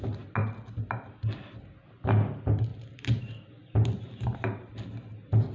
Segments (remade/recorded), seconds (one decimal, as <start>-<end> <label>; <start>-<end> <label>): 0.0-2.7 recorded; 2.7-3.2 remade; 3.2-5.5 recorded